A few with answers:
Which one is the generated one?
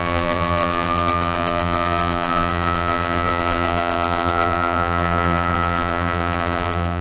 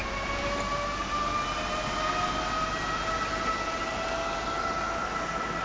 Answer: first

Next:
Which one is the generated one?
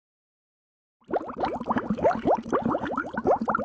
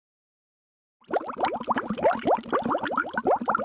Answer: second